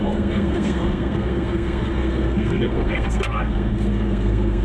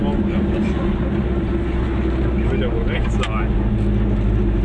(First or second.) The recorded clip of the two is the second